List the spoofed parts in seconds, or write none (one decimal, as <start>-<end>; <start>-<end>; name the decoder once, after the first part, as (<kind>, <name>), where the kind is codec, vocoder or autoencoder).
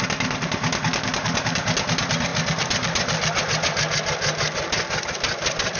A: none